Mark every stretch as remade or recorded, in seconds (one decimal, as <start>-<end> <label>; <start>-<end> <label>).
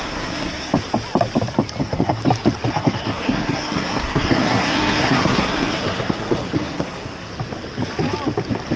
0.0-0.7 remade; 0.7-1.8 recorded; 1.8-2.2 remade; 2.2-2.7 recorded; 2.7-7.3 remade; 7.3-8.8 recorded